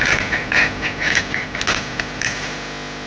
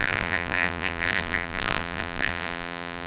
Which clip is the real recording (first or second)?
first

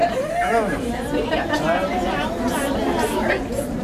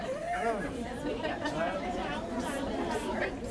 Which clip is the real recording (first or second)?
first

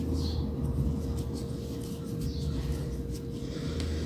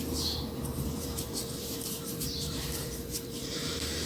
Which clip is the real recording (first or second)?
first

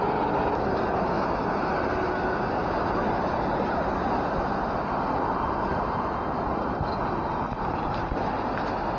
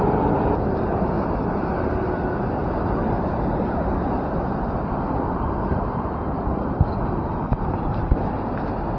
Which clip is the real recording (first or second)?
first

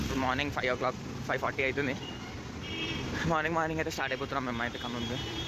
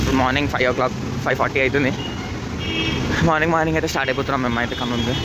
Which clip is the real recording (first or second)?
second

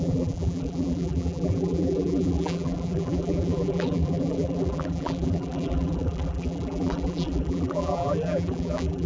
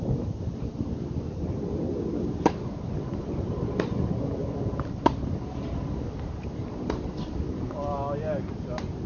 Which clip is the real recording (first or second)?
second